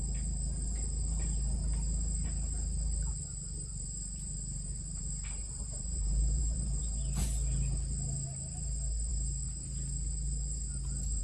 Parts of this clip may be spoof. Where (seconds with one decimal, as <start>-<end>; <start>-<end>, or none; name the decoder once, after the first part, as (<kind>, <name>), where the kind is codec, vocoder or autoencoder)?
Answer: 3.1-5.0 (vocoder, BigVGAN v2); 5.4-6.8